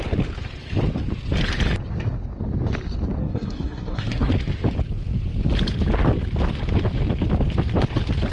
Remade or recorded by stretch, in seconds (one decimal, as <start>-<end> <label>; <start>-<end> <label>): 0.0-3.2 recorded; 3.2-4.3 remade; 4.3-8.3 recorded